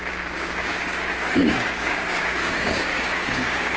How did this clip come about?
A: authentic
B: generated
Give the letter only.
B